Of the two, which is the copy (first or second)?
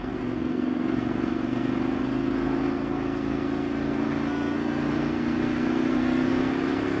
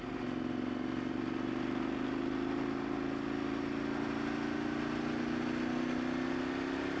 first